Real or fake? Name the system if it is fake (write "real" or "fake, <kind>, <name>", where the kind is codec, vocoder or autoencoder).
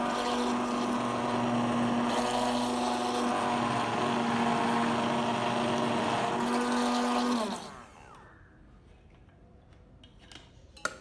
real